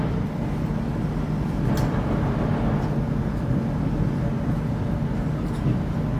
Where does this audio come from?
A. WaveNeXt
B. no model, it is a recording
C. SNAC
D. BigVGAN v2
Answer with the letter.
B